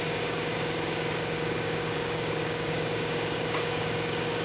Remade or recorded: remade